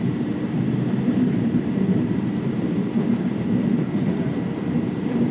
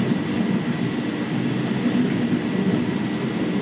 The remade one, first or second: first